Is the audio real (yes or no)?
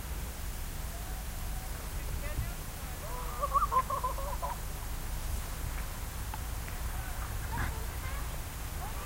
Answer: yes